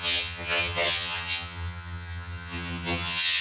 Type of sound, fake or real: fake